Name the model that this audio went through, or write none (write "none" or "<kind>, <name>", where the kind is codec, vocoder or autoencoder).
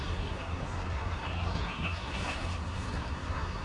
codec, SNAC